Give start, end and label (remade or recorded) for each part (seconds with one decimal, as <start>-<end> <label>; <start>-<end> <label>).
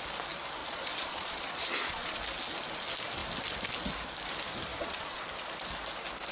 0.0-0.6 recorded; 0.6-2.2 remade; 2.2-4.7 recorded; 4.7-5.2 remade; 5.2-6.3 recorded